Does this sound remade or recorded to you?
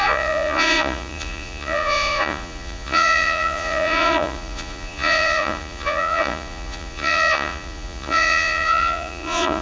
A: remade